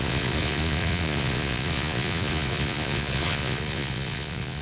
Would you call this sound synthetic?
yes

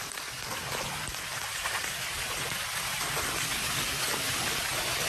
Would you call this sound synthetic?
no